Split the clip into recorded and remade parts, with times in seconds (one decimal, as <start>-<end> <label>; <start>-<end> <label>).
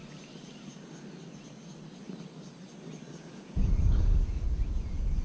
0.0-3.1 recorded; 3.1-5.2 remade